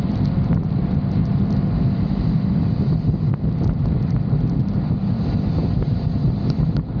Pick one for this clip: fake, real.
fake